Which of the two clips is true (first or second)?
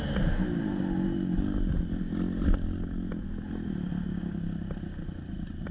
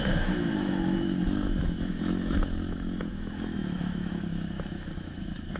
first